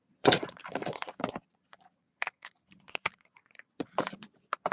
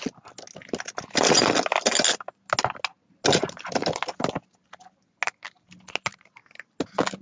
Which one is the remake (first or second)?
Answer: first